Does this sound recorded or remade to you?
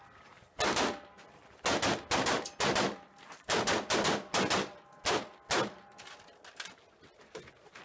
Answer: recorded